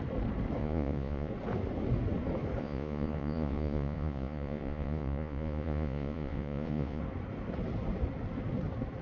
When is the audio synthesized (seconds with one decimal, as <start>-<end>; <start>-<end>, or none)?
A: 0.6-1.3; 2.6-7.0